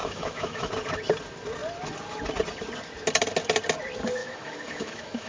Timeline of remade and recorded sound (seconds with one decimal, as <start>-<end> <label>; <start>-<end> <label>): 0.0-0.7 remade; 0.7-4.2 recorded; 4.2-5.3 remade